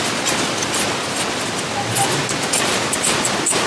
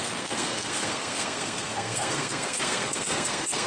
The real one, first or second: first